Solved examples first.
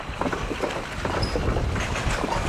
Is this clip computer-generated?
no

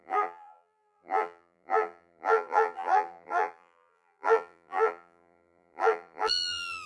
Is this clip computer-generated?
yes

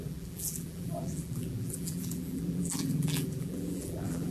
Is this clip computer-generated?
yes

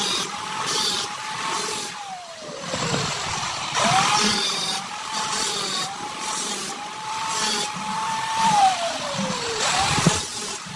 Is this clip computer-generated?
yes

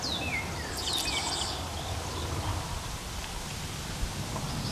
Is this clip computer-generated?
no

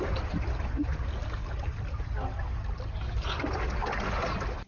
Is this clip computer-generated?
no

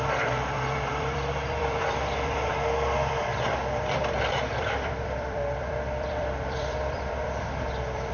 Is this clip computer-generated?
yes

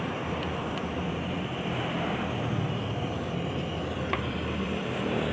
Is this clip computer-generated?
yes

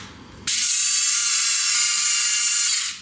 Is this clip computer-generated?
no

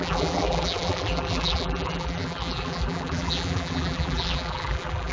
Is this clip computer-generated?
yes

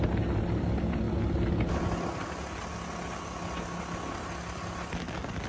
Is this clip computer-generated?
no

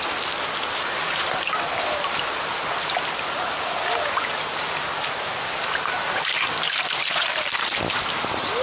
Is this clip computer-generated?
yes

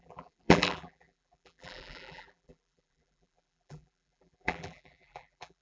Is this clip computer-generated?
yes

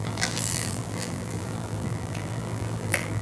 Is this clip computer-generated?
yes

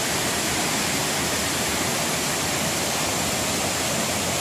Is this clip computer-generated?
no